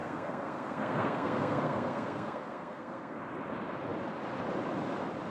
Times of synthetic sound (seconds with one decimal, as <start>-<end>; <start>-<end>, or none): 0.0-3.2